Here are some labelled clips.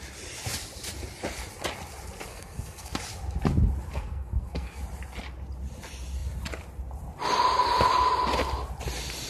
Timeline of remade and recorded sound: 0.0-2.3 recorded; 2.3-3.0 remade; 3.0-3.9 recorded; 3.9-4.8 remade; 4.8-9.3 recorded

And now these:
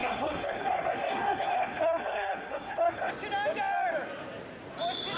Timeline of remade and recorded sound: 0.0-3.1 remade; 3.1-5.2 recorded

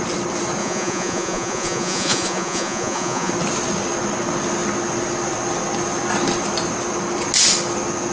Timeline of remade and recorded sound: 0.0-0.6 recorded; 0.6-3.3 remade; 3.3-8.1 recorded

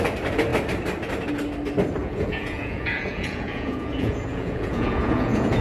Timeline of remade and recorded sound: 0.0-2.0 recorded; 2.0-5.6 remade

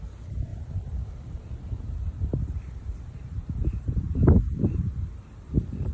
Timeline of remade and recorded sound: 0.0-5.9 remade

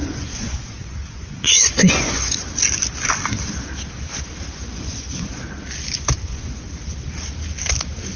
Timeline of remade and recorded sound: 0.0-2.5 remade; 2.5-4.5 recorded; 4.5-5.4 remade; 5.4-6.2 recorded; 6.2-6.7 remade; 6.7-8.2 recorded